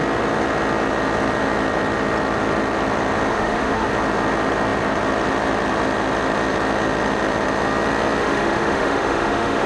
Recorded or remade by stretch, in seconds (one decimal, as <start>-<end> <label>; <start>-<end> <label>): 0.0-3.3 recorded; 3.3-3.9 remade; 3.9-8.2 recorded; 8.2-9.7 remade